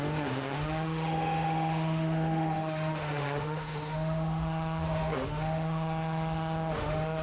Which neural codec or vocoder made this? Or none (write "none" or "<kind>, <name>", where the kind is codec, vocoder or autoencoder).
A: autoencoder, DAC-VAE